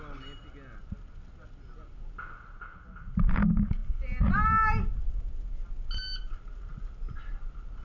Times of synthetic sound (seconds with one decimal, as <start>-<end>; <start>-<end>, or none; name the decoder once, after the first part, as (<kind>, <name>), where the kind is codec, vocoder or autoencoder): none